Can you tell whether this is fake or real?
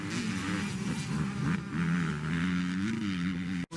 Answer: real